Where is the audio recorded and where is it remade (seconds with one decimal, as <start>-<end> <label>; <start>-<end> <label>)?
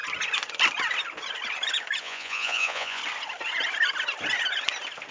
0.0-2.0 recorded; 2.0-3.0 remade; 3.0-5.1 recorded